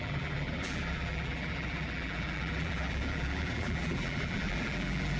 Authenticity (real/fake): fake